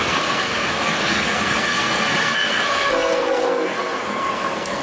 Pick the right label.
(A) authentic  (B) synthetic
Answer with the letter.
B